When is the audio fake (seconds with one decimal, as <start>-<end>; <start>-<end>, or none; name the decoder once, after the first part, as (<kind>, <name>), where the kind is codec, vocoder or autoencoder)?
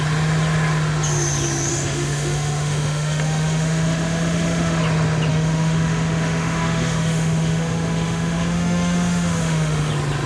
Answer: 1.7-4.8 (autoencoder, DAC-VAE); 5.3-9.9